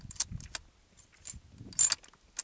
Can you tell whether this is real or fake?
real